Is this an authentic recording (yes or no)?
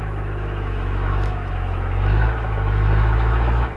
no